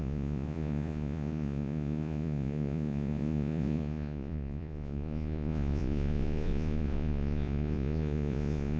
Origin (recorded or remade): remade